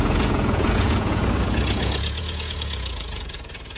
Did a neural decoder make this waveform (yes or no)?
yes